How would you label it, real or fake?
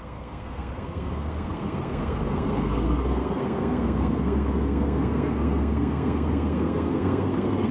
fake